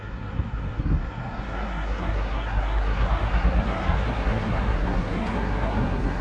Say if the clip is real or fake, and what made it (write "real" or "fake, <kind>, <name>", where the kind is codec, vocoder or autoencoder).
fake, codec, SNAC